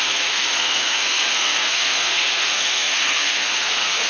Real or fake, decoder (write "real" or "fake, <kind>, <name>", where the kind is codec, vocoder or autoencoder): fake, codec, SNAC